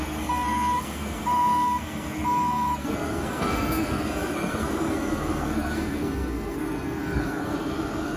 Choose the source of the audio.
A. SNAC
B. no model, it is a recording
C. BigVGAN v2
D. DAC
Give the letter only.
A